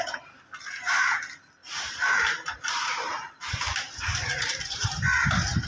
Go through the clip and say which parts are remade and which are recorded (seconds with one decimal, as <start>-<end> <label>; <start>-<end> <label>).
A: 0.0-1.6 recorded; 1.6-5.0 remade; 5.0-5.7 recorded